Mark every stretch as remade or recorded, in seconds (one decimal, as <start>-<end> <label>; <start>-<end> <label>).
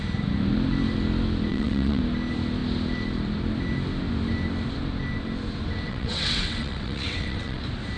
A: 0.0-1.5 recorded; 1.5-2.0 remade; 2.0-5.9 recorded; 5.9-7.6 remade; 7.6-8.0 recorded